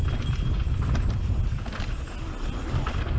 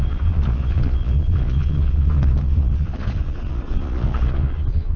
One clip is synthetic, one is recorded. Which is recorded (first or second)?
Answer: first